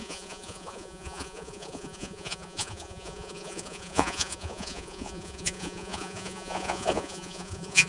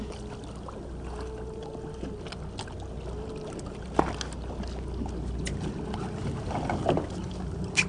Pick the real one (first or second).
second